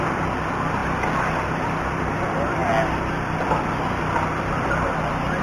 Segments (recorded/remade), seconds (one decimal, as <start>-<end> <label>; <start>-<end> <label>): 0.0-5.4 recorded